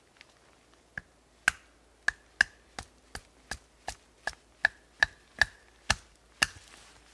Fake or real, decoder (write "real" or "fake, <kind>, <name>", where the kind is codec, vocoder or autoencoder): real